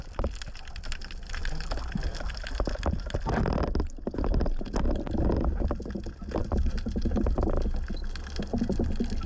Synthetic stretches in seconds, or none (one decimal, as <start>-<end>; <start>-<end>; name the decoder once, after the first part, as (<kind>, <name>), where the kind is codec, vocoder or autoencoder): 6.4-7.0 (vocoder, BigVGAN v2)